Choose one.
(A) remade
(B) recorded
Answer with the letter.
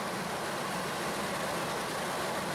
B